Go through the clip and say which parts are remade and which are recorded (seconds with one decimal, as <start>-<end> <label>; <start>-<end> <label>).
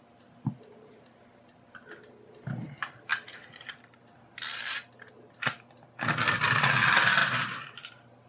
0.0-3.1 recorded; 3.1-5.1 remade; 5.1-7.2 recorded; 7.2-7.9 remade; 7.9-8.3 recorded